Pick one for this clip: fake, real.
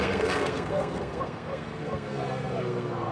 fake